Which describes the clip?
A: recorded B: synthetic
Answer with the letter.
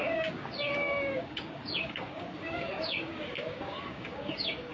B